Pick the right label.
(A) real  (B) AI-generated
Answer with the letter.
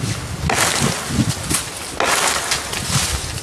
A